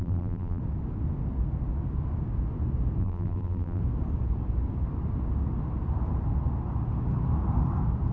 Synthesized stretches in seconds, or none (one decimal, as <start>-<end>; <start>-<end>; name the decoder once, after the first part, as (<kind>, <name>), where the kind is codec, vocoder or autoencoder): 0.0-0.6 (vocoder, BigVGAN v2); 3.0-3.8